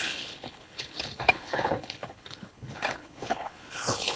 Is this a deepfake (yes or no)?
yes